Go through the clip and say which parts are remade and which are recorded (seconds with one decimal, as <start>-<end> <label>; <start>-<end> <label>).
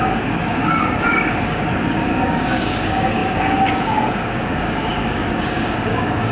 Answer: 0.0-6.3 remade